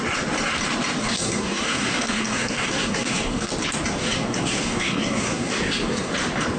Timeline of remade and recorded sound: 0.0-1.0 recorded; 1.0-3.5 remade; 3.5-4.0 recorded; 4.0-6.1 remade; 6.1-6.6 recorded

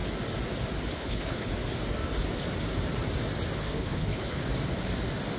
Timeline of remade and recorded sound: 0.0-0.9 recorded; 0.9-1.5 remade; 1.5-3.6 recorded; 3.6-4.4 remade; 4.4-5.4 recorded

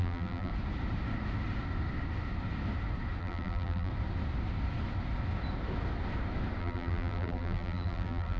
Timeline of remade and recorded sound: 0.0-0.5 remade; 0.5-3.2 recorded; 3.2-3.9 remade; 3.9-6.6 recorded; 6.6-8.4 remade

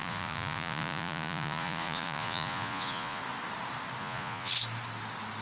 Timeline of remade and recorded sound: 0.0-3.2 remade; 3.2-4.0 recorded; 4.0-4.5 remade; 4.5-5.4 recorded